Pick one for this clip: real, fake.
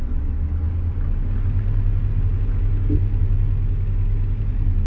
real